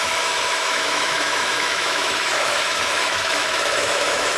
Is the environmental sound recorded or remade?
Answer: remade